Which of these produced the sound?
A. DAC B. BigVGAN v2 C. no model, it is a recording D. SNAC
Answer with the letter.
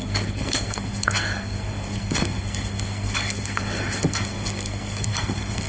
D